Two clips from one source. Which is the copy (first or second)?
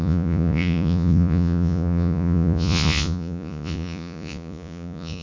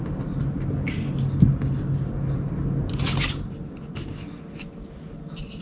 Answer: first